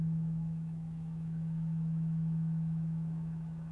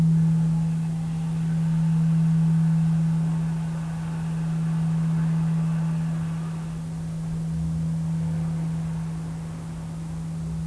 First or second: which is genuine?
second